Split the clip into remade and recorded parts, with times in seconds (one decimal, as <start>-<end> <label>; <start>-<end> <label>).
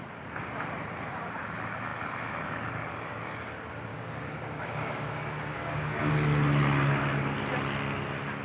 0.0-3.9 recorded; 3.9-6.1 remade; 6.1-8.4 recorded